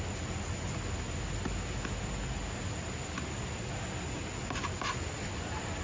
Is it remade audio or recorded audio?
recorded